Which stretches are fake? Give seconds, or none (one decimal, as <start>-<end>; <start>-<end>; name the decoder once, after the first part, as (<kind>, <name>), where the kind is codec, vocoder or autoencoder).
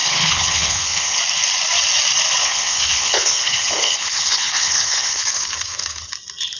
0.0-1.2 (codec, HILCodec); 2.4-6.1